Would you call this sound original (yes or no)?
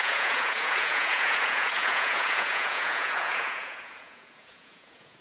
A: no